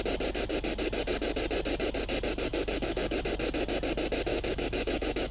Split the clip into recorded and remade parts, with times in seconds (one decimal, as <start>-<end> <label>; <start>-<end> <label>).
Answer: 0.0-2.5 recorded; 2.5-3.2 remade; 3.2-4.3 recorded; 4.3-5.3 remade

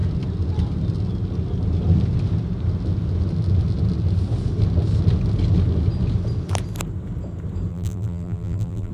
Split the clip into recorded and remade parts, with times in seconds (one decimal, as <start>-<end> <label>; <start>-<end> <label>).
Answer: 0.0-7.7 recorded; 7.7-8.9 remade

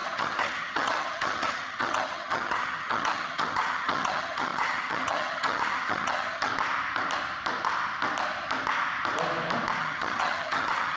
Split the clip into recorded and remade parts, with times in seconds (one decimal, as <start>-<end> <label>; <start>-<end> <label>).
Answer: 0.0-6.5 remade; 6.5-9.8 recorded; 9.8-11.0 remade

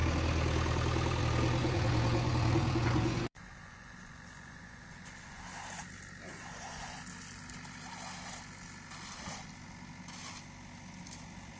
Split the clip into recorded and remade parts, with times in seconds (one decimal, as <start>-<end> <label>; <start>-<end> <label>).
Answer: 0.0-1.6 recorded; 1.6-5.4 remade; 5.4-6.3 recorded; 6.3-7.0 remade; 7.0-11.6 recorded